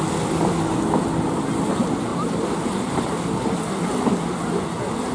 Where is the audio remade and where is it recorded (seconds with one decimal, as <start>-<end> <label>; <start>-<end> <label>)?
0.0-2.1 recorded; 2.1-3.1 remade; 3.1-5.1 recorded